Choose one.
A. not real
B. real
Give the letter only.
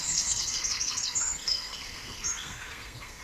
A